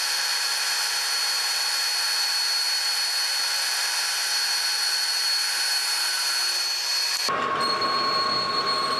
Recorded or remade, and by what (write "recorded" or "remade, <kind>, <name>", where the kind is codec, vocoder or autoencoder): recorded